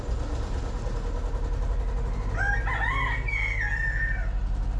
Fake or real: real